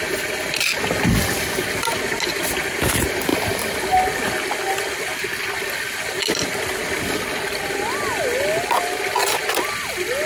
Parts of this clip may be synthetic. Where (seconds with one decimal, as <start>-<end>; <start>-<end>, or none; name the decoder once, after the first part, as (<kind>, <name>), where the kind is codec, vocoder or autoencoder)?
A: none